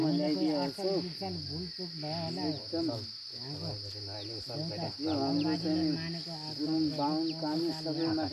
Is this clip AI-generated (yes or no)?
no